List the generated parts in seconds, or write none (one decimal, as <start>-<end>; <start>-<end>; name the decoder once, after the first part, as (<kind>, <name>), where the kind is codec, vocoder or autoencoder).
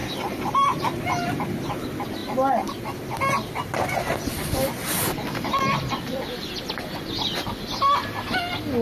0.0-0.8 (vocoder, BigVGAN v2)